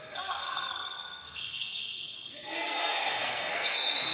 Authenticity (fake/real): fake